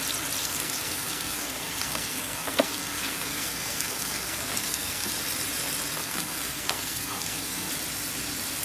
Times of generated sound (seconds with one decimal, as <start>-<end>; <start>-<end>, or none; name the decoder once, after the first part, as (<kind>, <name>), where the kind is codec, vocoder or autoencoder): 0.4-5.1 (codec, SNAC); 6.0-7.7